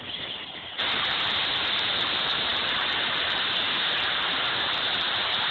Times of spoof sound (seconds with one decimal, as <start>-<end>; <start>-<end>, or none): none